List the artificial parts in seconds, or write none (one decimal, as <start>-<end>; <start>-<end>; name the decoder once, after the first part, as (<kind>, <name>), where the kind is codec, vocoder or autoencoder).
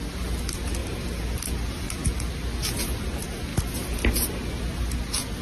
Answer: none